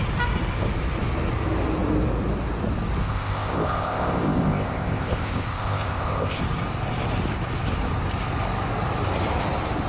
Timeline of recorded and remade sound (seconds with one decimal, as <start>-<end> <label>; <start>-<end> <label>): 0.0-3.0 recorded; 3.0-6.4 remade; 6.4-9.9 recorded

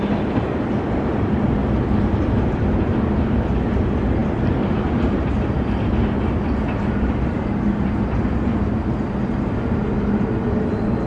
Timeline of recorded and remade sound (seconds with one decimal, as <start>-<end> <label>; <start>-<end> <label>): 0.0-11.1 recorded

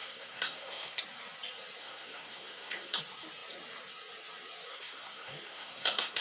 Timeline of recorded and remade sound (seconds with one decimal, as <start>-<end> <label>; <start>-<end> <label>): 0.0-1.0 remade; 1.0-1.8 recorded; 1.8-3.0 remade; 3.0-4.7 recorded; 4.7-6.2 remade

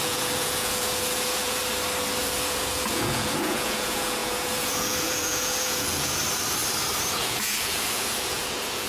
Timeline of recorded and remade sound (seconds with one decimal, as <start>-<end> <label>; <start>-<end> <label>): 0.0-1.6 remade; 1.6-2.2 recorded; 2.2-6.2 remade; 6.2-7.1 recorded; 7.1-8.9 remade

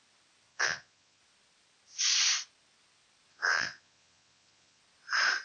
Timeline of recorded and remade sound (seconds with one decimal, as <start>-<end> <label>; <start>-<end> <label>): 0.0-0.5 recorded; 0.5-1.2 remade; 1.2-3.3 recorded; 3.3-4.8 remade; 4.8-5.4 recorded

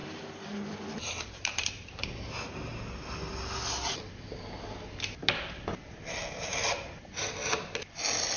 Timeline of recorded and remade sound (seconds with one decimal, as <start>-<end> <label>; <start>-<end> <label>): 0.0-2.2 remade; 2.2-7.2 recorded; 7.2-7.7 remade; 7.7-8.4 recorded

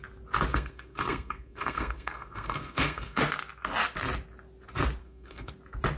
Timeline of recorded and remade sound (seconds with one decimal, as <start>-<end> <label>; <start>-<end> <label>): 0.0-0.5 recorded; 0.5-3.2 remade; 3.2-5.0 recorded; 5.0-5.5 remade; 5.5-6.0 recorded

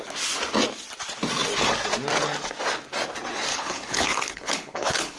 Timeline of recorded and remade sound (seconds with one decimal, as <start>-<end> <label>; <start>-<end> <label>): 0.0-3.5 recorded; 3.5-5.2 remade